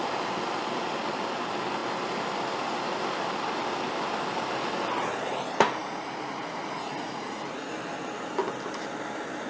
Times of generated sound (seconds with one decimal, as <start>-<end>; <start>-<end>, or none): 5.8-7.7

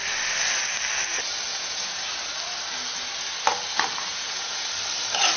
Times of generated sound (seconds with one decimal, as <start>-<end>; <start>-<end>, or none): 1.5-2.0; 4.1-4.7

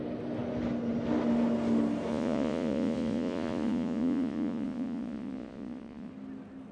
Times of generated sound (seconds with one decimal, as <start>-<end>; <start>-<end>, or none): 2.1-6.1

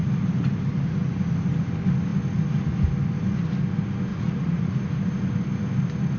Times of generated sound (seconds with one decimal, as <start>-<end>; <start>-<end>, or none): 4.1-4.7

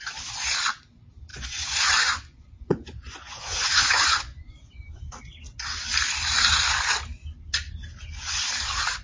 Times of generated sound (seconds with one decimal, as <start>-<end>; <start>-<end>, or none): 1.3-4.7